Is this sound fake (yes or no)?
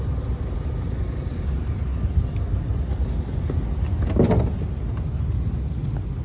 no